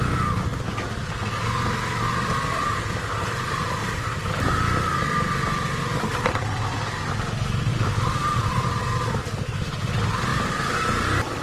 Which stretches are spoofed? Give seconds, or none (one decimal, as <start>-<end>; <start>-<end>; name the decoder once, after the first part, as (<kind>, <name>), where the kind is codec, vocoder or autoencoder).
3.8-4.5 (vocoder, BigVGAN v2); 7.7-8.8; 10.3-11.0